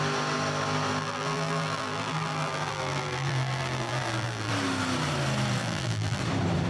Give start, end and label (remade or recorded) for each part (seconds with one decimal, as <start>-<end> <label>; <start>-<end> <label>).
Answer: 0.0-1.0 recorded; 1.0-4.5 remade; 4.5-5.6 recorded; 5.6-6.2 remade; 6.2-6.7 recorded